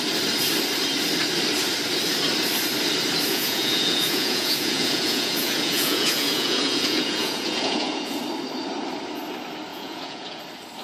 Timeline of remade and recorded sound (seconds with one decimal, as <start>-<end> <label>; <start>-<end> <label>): 0.0-3.3 recorded; 3.3-8.2 remade; 8.2-9.7 recorded; 9.7-10.4 remade; 10.4-10.8 recorded